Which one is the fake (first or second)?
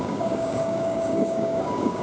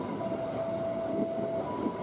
first